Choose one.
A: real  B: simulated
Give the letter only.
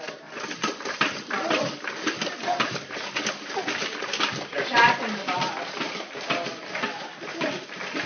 A